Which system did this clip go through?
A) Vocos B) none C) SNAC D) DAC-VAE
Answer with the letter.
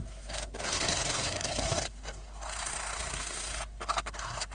C